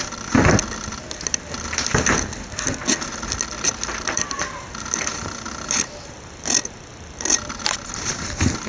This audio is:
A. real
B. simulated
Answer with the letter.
A